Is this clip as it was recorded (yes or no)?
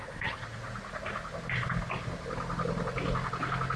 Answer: yes